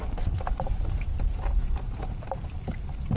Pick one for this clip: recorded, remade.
recorded